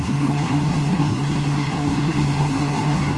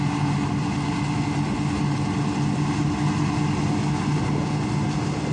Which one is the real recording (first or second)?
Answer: second